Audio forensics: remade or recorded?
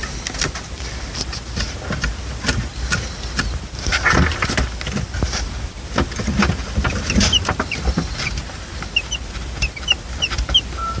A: remade